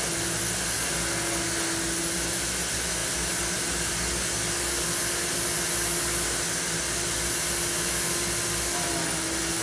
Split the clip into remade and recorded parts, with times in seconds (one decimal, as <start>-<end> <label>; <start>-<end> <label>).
0.0-9.6 recorded